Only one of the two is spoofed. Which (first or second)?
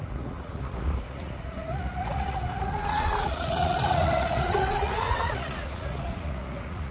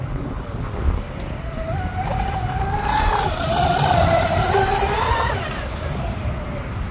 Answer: first